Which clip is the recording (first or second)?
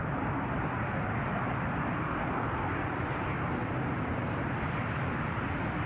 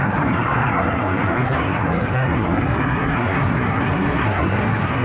first